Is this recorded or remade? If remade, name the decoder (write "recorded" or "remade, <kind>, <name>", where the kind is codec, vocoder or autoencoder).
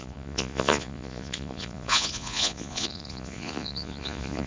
remade, vocoder, Vocos